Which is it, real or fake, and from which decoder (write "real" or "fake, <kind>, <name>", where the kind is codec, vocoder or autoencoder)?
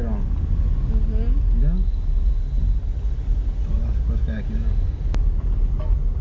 real